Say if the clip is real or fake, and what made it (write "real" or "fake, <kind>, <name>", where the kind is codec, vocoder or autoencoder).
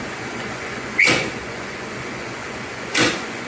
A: fake, vocoder, Vocos